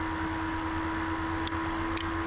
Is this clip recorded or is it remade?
recorded